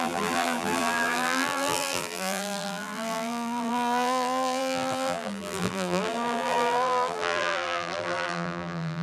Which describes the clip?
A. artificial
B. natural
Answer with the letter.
A